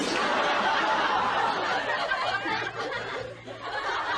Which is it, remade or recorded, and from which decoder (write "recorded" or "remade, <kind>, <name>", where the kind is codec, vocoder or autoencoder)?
recorded